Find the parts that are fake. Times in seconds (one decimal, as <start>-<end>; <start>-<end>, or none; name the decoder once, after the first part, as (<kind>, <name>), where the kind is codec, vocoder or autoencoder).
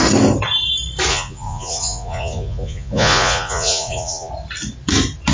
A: 1.1-4.3 (vocoder, Vocos)